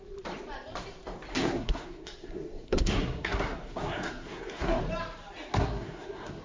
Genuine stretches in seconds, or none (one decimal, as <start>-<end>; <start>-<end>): 0.0-1.3; 4.8-5.5